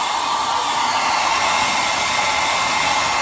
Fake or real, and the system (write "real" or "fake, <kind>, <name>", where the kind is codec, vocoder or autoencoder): real